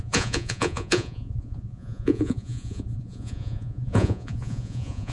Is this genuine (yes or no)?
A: no